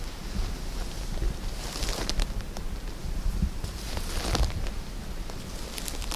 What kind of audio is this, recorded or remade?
recorded